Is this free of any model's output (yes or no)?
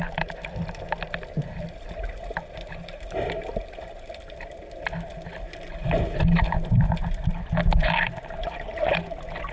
yes